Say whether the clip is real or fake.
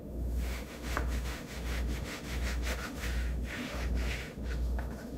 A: fake